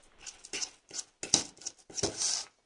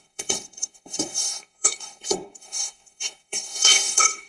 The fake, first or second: second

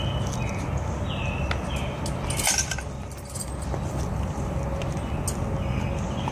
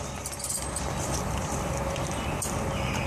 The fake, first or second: second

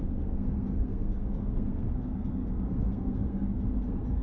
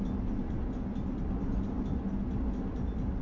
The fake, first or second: first